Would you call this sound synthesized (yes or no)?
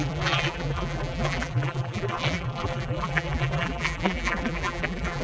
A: yes